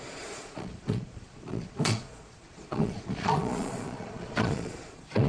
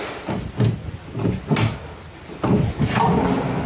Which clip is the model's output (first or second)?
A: first